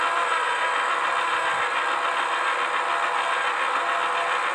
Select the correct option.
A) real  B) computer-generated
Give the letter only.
A